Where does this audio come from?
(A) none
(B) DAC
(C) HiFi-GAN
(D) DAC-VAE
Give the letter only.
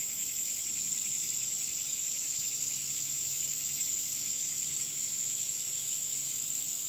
B